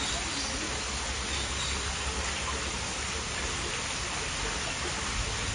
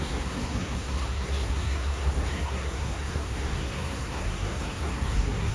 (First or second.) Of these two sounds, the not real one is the second